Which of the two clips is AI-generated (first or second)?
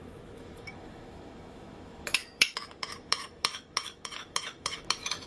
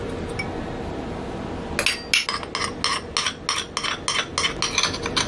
first